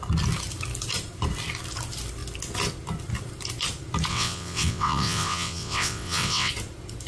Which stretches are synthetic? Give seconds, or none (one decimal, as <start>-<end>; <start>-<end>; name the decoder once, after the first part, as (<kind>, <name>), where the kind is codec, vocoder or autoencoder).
4.1-6.5 (vocoder, WaveNeXt)